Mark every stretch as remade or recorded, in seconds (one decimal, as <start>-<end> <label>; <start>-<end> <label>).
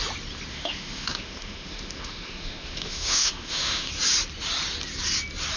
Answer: 0.0-0.5 recorded; 0.5-3.9 remade; 3.9-5.6 recorded